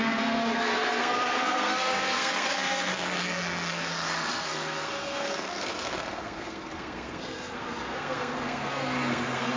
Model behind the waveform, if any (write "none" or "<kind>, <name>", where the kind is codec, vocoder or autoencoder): codec, SNAC